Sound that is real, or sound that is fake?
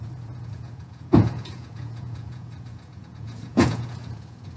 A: fake